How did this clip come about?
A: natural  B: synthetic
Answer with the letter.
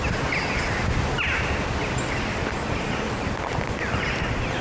A